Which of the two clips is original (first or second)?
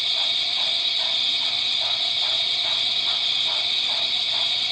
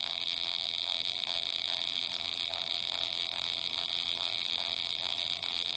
first